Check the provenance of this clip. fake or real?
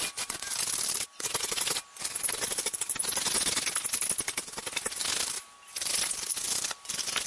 real